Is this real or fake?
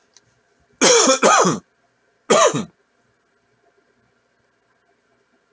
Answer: real